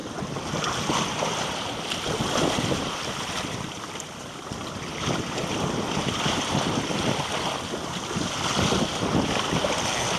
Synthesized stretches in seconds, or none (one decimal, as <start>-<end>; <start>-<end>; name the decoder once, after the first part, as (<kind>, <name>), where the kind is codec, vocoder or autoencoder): none